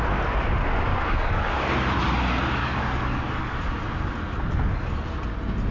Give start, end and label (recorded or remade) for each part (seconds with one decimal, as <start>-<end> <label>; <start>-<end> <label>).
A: 0.0-0.9 recorded; 0.9-1.5 remade; 1.5-2.6 recorded; 2.6-3.6 remade; 3.6-5.7 recorded